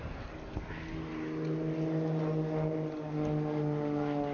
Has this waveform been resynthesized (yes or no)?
no